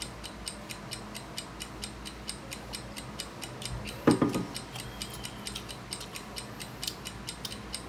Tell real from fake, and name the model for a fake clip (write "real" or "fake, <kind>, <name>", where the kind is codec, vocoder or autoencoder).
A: real